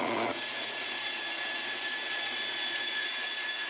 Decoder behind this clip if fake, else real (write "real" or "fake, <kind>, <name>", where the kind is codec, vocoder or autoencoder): fake, vocoder, Vocos